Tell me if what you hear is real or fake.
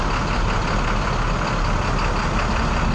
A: real